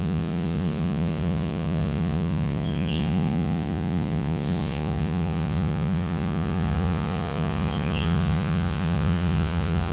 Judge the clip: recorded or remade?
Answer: remade